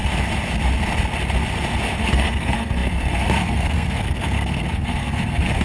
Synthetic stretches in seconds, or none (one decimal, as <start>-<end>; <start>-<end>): 2.0-5.6

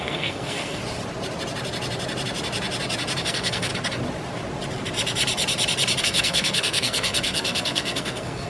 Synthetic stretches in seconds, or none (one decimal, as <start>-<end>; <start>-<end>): 0.0-0.8; 3.2-3.7; 6.0-8.5

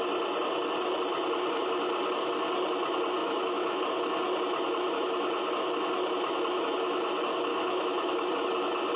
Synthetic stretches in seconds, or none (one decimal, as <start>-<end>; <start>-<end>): 3.2-3.8; 7.5-8.3

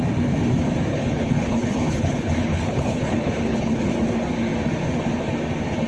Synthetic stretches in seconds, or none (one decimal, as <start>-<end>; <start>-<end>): 0.9-3.9